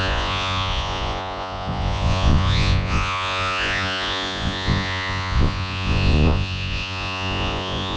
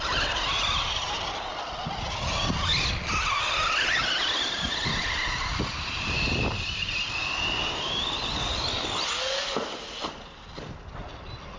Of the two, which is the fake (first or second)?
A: first